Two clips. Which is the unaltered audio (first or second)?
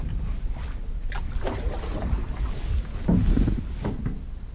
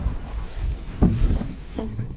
first